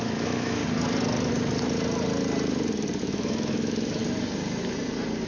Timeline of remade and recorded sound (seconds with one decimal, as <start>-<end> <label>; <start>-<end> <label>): 0.0-0.6 remade; 0.6-3.0 recorded; 3.0-4.0 remade; 4.0-5.3 recorded